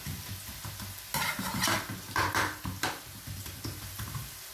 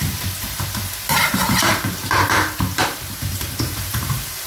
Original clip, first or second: first